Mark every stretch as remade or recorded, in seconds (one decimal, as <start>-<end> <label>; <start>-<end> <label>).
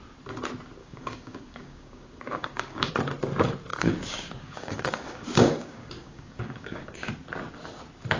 0.0-0.8 recorded; 0.8-2.9 remade; 2.9-3.7 recorded; 3.7-7.1 remade; 7.1-8.2 recorded